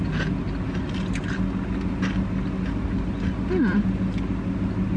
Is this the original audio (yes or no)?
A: yes